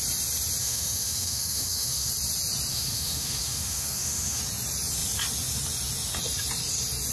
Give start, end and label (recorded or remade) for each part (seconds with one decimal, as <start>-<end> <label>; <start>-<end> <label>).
0.0-0.6 recorded; 0.6-2.1 remade; 2.1-2.7 recorded; 2.7-4.4 remade; 4.4-7.1 recorded